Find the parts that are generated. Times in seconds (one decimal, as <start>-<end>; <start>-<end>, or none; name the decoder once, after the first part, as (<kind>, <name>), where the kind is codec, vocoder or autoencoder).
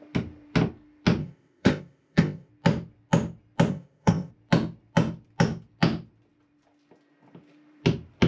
1.2-2.5 (codec, ZipCodec); 3.7-4.3